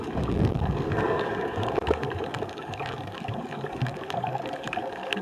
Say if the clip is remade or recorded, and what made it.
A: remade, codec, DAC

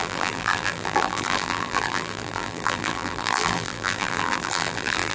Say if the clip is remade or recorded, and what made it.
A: remade, vocoder, BigVGAN v2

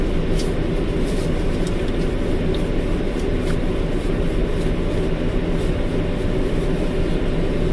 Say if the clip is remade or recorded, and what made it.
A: recorded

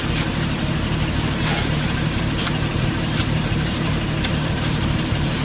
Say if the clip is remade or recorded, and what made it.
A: remade, vocoder, BigVGAN v2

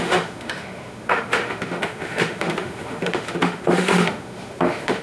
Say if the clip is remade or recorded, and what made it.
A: remade, autoencoder, DAC-VAE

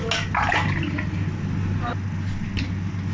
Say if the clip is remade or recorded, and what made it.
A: recorded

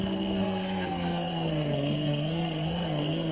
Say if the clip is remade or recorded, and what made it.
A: remade, codec, SNAC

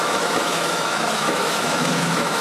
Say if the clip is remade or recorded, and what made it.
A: remade, autoencoder, DAC-VAE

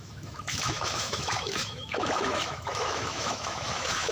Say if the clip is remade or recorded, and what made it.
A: remade, autoencoder, DAC-VAE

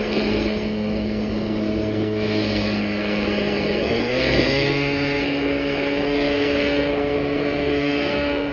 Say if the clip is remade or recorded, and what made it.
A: remade, codec, SNAC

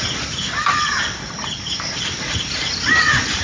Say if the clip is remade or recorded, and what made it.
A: remade, vocoder, BigVGAN v2